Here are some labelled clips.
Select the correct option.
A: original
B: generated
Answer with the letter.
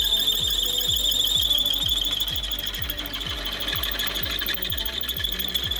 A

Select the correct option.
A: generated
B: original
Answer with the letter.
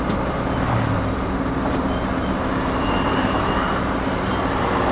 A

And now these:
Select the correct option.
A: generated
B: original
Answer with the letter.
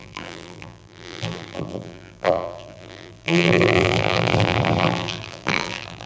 A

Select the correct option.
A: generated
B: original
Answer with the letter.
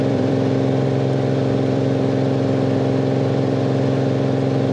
A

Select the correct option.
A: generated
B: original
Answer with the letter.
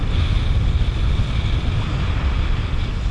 B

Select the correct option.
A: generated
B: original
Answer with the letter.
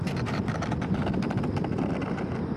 B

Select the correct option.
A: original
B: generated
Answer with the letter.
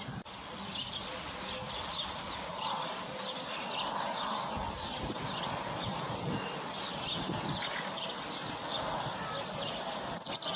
A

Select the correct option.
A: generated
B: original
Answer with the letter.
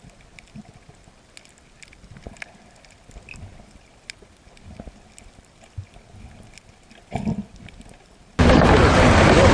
B